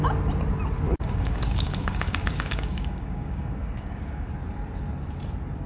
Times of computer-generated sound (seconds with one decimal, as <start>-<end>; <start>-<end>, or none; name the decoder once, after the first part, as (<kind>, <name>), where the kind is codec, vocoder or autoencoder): 0.9-4.3 (codec, DAC)